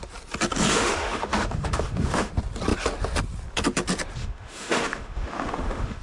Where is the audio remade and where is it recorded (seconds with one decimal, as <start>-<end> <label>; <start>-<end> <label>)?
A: 0.0-0.7 recorded; 0.7-2.3 remade; 2.3-4.2 recorded; 4.2-6.0 remade